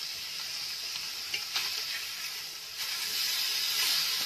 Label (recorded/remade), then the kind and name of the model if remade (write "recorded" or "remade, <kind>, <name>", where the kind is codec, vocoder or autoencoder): recorded